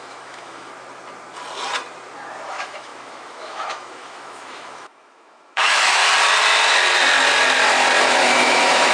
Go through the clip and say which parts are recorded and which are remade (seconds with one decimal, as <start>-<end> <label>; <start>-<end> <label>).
0.0-0.7 remade; 0.7-2.5 recorded; 2.5-6.0 remade; 6.0-8.0 recorded; 8.0-8.9 remade